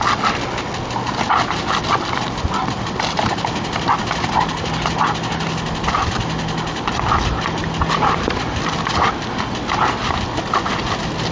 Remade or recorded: recorded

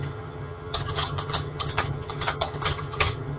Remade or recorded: remade